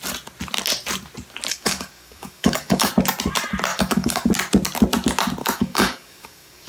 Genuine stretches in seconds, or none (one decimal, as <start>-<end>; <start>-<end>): 0.0-1.5; 2.9-3.7; 4.3-5.4